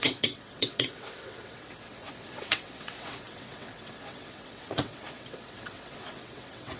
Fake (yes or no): yes